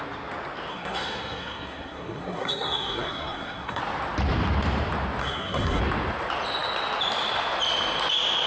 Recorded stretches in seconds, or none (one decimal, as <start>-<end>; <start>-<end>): 0.0-0.7; 3.8-5.2; 5.8-8.5